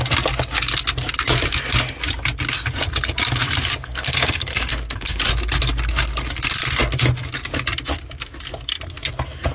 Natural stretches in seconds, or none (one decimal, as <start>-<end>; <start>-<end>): 0.0-3.8; 5.2-9.5